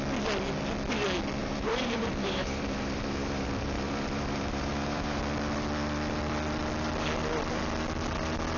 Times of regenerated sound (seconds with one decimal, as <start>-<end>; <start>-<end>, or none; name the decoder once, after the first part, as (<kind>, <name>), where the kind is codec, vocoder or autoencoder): 1.4-5.2 (vocoder, BigVGAN v2)